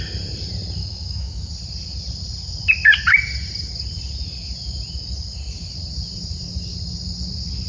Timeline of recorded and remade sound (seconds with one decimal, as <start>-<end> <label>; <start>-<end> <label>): 0.0-0.8 recorded; 0.8-1.5 remade; 1.5-7.7 recorded